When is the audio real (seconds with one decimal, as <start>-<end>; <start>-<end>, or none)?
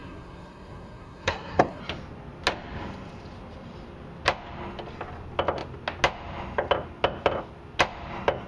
1.8-8.5